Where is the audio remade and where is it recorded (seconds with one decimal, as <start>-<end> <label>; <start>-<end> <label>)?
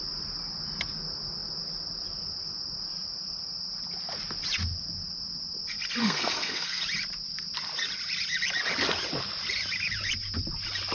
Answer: 0.0-6.0 recorded; 6.0-6.8 remade; 6.8-10.9 recorded